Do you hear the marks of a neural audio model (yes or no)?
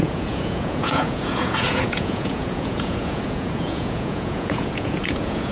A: yes